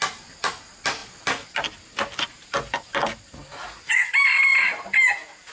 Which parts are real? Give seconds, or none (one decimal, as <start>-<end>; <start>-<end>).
0.0-5.5